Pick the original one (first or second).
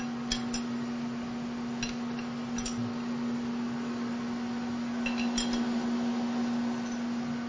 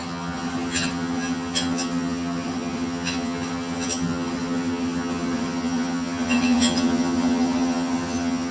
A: first